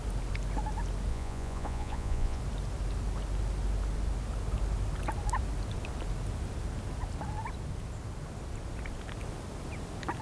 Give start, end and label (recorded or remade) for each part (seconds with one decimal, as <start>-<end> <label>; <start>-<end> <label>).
0.0-1.1 recorded; 1.1-2.4 remade; 2.4-10.2 recorded